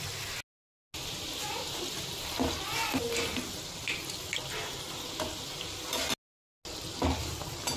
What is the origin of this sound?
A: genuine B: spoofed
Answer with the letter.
A